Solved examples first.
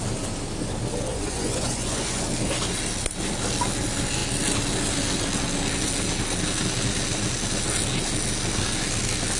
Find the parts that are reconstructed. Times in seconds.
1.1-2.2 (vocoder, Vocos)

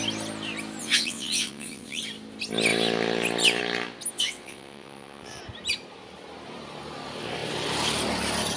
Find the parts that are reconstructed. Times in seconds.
0.8-2.0 (vocoder, WaveNeXt); 4.1-5.4